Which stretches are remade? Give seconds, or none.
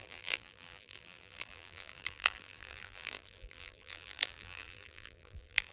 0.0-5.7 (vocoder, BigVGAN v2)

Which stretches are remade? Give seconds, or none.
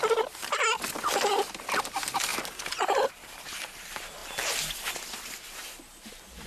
2.3-3.4 (vocoder, BigVGAN v2)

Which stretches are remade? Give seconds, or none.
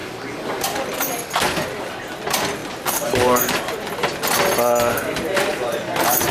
2.6-3.6 (vocoder, BigVGAN v2); 5.5-6.3